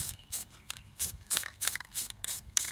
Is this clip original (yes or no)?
no